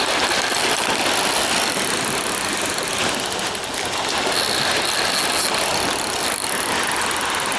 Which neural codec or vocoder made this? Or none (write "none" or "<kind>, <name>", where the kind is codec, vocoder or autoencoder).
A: none